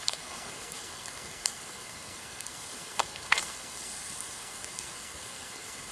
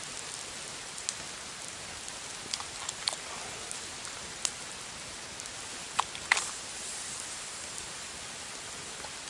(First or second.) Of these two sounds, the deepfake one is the first